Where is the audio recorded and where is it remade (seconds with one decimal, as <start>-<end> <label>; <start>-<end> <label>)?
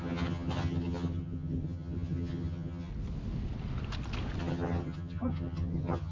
0.0-2.9 remade; 2.9-4.4 recorded; 4.4-6.1 remade